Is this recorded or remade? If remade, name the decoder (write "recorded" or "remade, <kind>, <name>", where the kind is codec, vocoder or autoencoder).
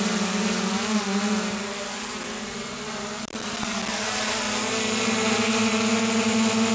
recorded